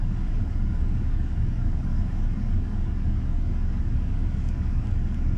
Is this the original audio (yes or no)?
no